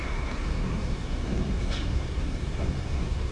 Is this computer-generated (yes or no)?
yes